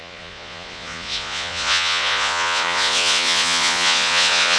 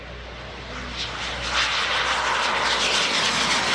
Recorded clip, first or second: second